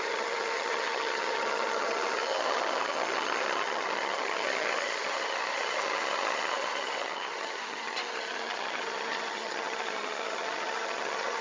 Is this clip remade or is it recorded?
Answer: remade